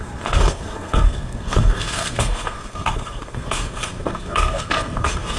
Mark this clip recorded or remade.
remade